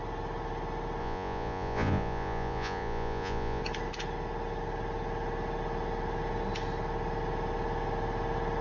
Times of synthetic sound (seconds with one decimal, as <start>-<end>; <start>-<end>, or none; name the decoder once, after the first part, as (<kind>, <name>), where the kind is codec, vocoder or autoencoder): 1.0-3.6 (vocoder, Vocos)